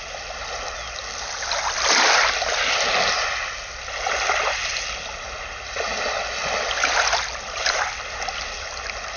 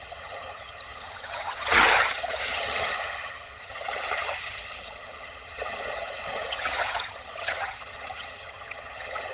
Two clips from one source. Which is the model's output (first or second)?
second